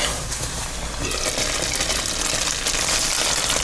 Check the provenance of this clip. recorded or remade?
recorded